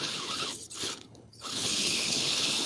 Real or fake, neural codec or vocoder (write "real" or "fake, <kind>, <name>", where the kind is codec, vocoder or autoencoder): fake, codec, HILCodec